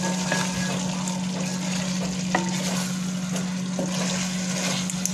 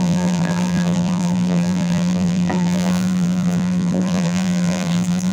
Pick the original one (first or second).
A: first